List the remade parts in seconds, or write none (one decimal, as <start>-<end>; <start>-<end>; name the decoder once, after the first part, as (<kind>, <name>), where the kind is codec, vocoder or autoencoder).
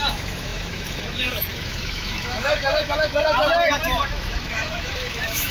0.0-5.5 (autoencoder, DAC-VAE)